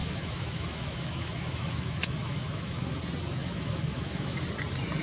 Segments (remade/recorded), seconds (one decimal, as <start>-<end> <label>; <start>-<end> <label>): 0.0-3.0 remade; 3.0-3.4 recorded; 3.4-4.4 remade; 4.4-5.0 recorded